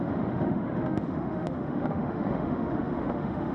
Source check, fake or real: fake